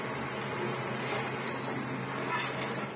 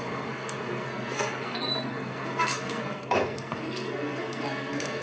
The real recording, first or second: first